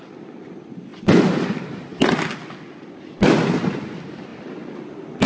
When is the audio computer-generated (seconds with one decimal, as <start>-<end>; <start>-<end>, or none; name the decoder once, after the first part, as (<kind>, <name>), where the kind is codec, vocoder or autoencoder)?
none